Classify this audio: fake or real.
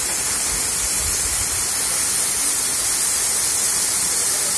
real